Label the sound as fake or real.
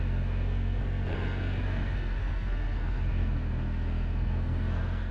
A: fake